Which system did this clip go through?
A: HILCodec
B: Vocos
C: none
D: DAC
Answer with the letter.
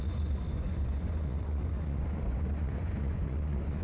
B